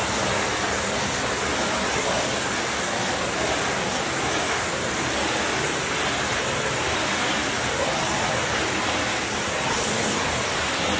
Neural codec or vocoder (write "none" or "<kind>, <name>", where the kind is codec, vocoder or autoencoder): none